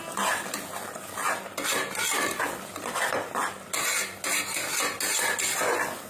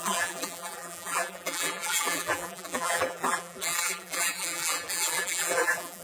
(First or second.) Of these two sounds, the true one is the first